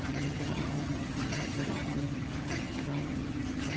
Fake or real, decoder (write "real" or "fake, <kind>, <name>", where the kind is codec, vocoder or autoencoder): fake, vocoder, HiFi-GAN